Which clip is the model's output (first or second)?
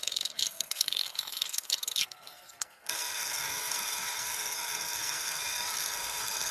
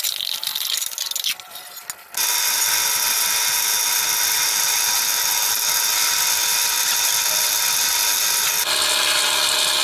first